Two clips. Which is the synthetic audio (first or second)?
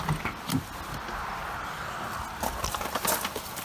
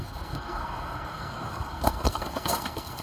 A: second